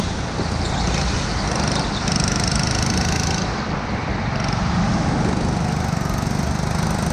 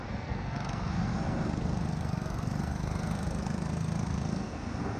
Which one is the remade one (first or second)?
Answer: second